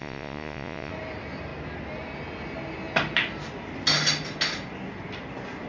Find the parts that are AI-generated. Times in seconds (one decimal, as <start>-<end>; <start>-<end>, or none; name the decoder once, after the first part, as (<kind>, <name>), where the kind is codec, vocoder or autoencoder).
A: 0.0-0.9 (vocoder, Vocos)